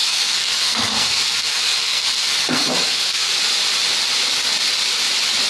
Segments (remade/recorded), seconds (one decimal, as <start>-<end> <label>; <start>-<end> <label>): 0.0-3.3 remade; 3.3-5.5 recorded